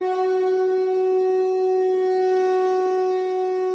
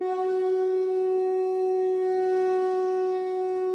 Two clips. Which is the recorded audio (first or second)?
first